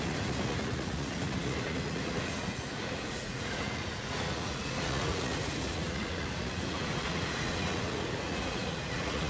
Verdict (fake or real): fake